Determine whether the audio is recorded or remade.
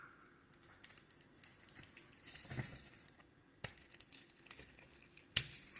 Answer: recorded